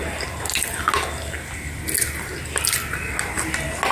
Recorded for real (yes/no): yes